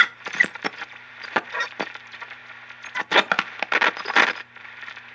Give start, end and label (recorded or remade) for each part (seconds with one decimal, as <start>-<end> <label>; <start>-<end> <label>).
0.0-2.4 remade; 2.4-4.6 recorded; 4.6-5.1 remade